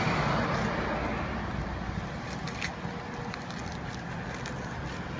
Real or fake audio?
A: real